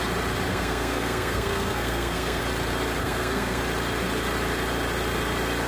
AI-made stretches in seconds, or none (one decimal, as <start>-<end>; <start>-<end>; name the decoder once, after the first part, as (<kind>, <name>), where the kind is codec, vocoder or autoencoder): 0.5-2.4 (codec, SNAC); 3.0-3.6